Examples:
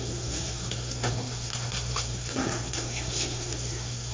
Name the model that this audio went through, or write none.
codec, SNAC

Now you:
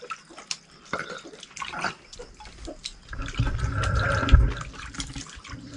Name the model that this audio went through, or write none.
none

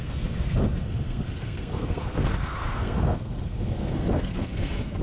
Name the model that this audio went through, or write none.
codec, SNAC